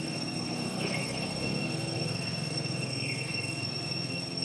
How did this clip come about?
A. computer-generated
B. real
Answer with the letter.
A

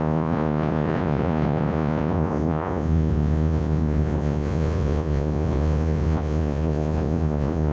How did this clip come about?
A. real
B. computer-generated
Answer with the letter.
B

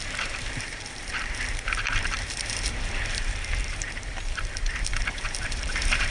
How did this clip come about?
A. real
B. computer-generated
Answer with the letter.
B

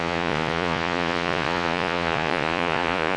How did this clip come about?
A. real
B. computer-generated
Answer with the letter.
B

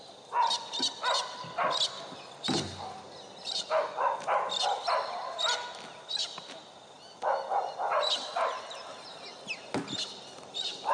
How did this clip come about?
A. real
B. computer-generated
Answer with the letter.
A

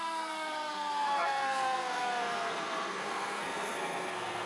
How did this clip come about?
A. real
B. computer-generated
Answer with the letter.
B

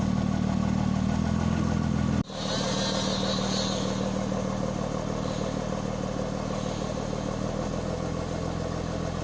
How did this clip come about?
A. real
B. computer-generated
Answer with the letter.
A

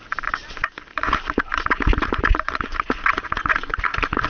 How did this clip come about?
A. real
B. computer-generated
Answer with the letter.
A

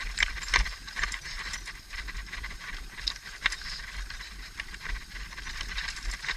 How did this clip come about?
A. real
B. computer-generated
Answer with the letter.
B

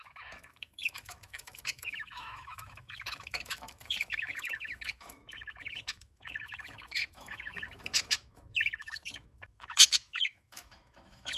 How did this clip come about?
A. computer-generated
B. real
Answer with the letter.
A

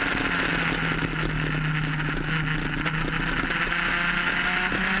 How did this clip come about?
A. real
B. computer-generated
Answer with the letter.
A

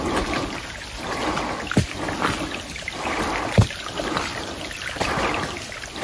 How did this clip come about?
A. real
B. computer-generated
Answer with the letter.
A